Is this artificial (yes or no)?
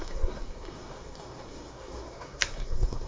yes